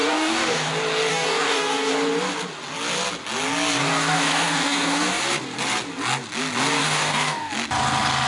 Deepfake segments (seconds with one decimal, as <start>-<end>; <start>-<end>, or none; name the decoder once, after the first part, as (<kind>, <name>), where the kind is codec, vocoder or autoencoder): 0.0-0.7 (codec, DAC); 1.1-1.9; 3.9-5.2; 6.8-7.5